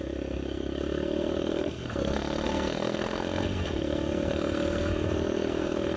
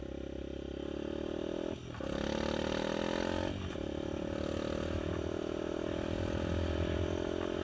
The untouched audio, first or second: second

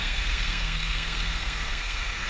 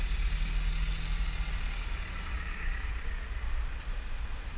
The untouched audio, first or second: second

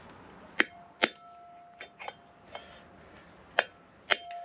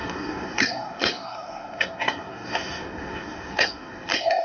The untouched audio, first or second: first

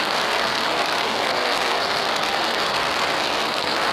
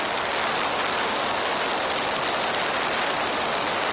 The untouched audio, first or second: second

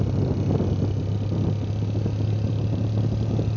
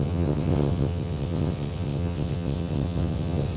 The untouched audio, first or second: first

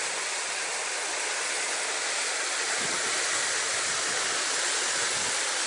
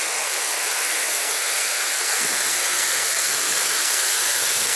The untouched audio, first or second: first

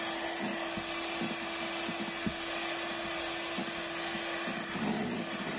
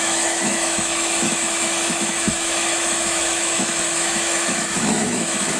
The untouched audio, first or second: first